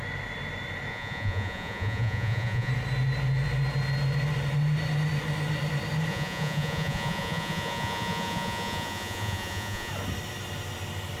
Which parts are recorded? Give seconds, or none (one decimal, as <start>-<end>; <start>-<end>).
0.0-0.9; 2.7-6.1; 9.9-11.2